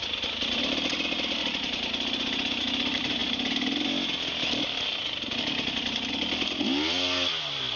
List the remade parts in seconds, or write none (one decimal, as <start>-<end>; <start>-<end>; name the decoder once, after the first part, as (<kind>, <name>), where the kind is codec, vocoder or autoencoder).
0.0-0.6 (vocoder, BigVGAN v2)